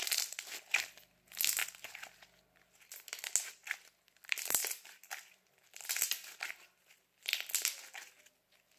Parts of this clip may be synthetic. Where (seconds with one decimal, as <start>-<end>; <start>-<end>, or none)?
none

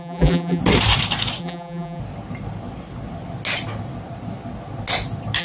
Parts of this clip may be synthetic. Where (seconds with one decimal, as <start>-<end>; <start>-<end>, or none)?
0.0-0.6; 1.4-2.0

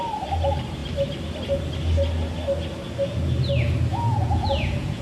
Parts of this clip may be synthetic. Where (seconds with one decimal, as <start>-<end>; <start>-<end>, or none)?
3.9-5.0